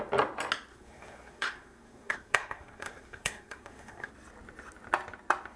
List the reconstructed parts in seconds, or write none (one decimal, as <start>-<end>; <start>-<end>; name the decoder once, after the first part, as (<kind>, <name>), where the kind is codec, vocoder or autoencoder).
0.7-4.1 (codec, SNAC)